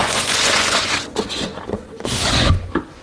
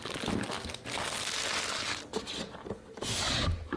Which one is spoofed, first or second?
first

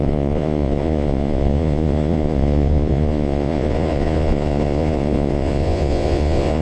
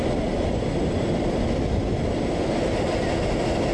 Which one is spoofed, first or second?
first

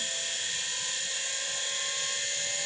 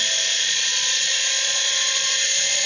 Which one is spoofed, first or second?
second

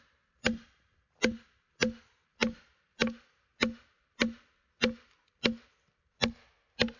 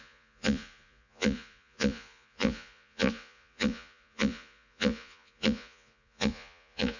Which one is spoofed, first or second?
second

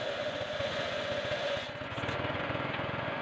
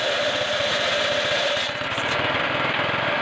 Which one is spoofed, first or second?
first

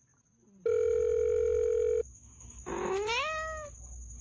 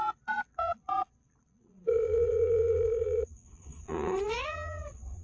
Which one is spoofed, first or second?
second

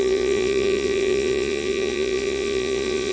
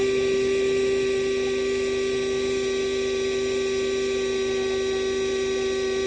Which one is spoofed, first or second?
first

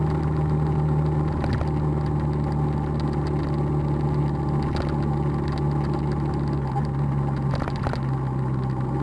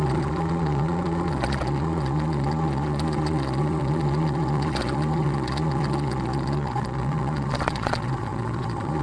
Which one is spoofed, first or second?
second